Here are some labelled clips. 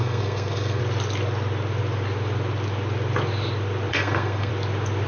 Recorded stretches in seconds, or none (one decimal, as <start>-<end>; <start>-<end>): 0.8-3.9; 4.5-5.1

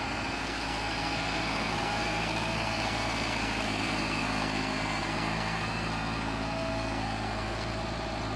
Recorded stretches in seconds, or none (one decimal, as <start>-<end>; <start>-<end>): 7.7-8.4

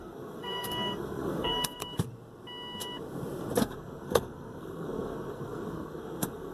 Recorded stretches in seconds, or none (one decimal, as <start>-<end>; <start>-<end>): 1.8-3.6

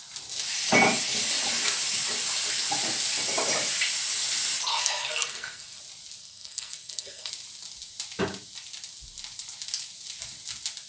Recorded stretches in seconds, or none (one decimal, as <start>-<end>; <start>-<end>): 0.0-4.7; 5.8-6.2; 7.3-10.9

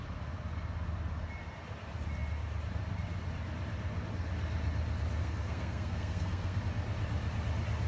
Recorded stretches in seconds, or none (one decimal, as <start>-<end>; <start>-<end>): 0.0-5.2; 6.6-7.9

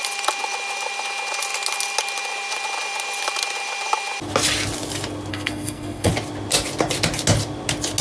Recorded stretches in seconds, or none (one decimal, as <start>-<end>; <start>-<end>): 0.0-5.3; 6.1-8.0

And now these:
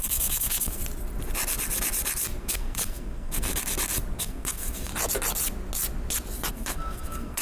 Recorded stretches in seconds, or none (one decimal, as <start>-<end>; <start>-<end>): 0.8-2.4; 3.5-4.2; 4.9-6.5